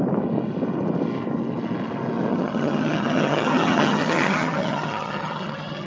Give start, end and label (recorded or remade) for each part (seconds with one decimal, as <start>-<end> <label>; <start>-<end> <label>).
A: 0.0-2.3 recorded; 2.3-5.9 remade